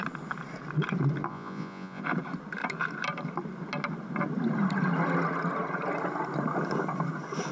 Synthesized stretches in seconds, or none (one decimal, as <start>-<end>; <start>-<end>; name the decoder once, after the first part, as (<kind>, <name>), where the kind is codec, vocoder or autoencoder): 1.3-2.0 (vocoder, Vocos)

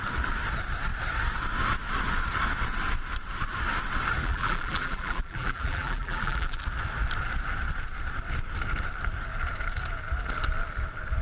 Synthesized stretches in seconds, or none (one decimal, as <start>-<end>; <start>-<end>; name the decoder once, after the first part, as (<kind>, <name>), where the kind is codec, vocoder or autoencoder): 4.2-6.6 (vocoder, BigVGAN v2)

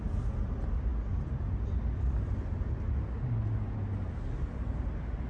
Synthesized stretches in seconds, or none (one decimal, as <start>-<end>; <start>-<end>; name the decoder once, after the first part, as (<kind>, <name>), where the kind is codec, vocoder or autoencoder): none

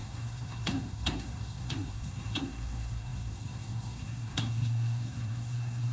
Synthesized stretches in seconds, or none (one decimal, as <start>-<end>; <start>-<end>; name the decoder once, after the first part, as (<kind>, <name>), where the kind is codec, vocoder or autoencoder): 0.0-5.9 (codec, SNAC)